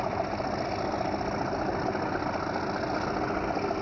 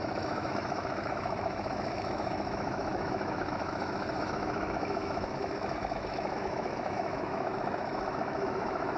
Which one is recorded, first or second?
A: first